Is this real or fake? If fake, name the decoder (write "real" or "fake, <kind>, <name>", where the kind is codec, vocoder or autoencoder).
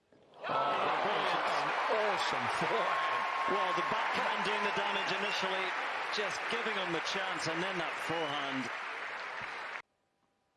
real